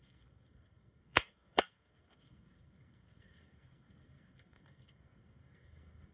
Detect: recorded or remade remade